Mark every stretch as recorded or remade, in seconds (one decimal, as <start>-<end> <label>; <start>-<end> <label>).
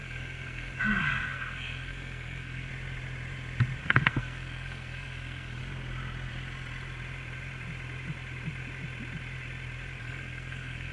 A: 0.0-2.7 remade; 2.7-3.8 recorded; 3.8-5.6 remade; 5.6-10.0 recorded; 10.0-10.9 remade